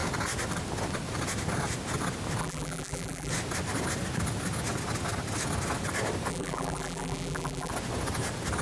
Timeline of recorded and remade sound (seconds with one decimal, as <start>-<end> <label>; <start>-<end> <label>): 0.0-2.4 recorded; 2.4-3.3 remade; 3.3-6.3 recorded; 6.3-7.7 remade; 7.7-8.6 recorded